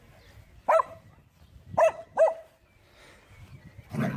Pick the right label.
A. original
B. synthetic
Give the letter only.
A